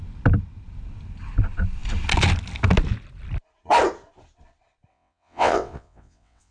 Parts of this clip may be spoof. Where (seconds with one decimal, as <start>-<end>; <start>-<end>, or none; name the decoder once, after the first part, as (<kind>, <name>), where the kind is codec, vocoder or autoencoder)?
4.9-6.5 (vocoder, WaveNeXt)